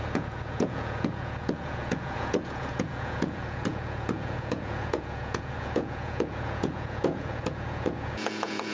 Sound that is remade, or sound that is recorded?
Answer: remade